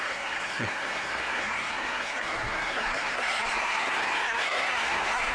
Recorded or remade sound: remade